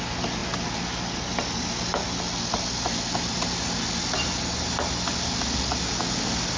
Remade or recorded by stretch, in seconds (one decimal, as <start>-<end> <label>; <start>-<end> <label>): 0.0-6.6 recorded